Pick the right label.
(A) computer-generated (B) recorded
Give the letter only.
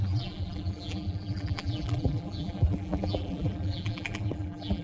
A